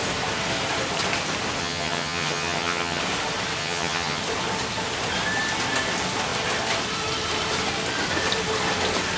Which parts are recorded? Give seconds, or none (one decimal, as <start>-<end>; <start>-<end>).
0.0-1.6; 3.0-3.6; 4.2-9.2